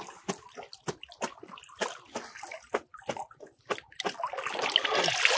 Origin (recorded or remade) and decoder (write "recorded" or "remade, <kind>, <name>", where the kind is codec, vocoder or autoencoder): recorded